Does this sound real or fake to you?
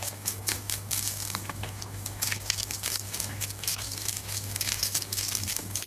fake